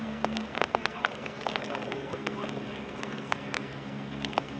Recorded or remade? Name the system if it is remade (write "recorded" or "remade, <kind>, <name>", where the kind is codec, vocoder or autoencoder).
remade, codec, SNAC